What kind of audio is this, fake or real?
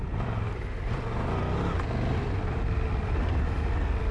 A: real